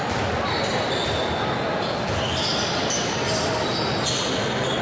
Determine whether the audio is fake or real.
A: real